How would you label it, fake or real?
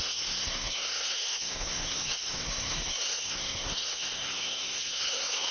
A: fake